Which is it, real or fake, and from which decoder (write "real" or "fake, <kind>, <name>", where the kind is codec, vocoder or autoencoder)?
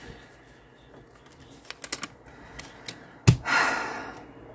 real